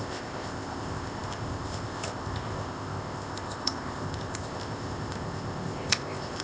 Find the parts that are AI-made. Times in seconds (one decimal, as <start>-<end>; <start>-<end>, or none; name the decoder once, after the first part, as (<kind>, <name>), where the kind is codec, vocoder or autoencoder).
0.0-6.4 (codec, ZipCodec)